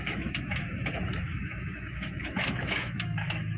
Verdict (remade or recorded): remade